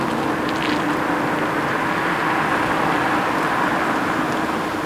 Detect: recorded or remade recorded